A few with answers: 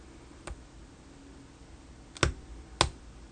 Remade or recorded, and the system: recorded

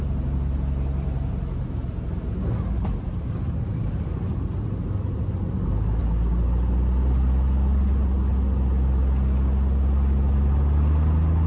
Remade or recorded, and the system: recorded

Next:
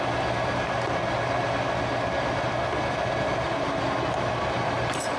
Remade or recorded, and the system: recorded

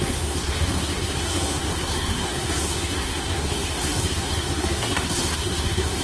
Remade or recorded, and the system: remade, codec, SNAC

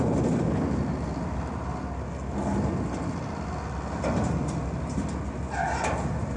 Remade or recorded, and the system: recorded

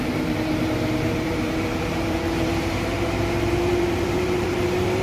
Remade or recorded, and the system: remade, vocoder, BigVGAN v2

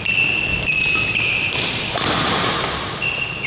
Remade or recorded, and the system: recorded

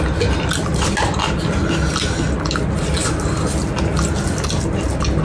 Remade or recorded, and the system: recorded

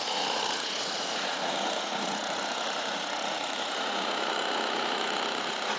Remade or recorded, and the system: remade, vocoder, Vocos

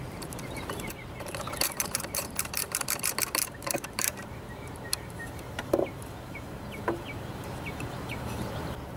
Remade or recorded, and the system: remade, vocoder, BigVGAN v2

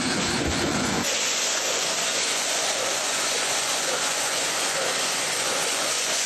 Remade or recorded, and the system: remade, vocoder, Vocos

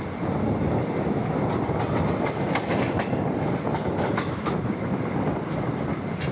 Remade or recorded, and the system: recorded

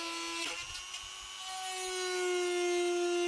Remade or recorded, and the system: recorded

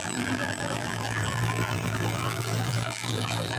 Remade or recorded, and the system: remade, vocoder, BigVGAN v2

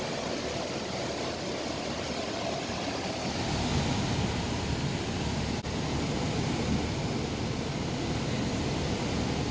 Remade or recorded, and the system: recorded